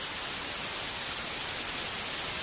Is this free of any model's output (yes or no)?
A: yes